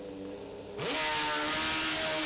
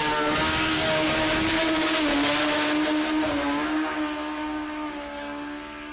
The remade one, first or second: second